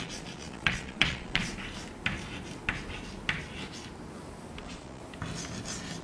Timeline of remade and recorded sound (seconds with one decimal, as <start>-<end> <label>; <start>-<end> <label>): 0.0-1.5 remade; 1.5-4.6 recorded; 4.6-5.0 remade; 5.0-6.0 recorded